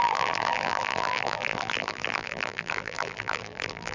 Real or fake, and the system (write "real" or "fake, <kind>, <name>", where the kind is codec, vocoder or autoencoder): fake, vocoder, BigVGAN v2